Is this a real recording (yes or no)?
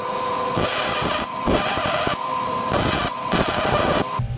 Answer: yes